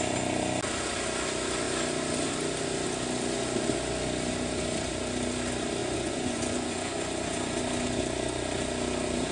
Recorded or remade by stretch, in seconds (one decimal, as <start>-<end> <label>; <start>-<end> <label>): 0.0-5.8 recorded; 5.8-7.6 remade; 7.6-9.3 recorded